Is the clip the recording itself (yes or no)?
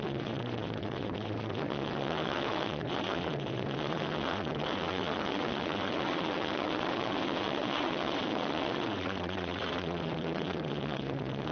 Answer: no